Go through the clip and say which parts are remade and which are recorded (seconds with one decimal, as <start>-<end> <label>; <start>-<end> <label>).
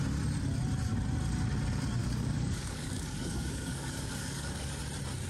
0.0-2.0 recorded; 2.0-4.8 remade; 4.8-5.3 recorded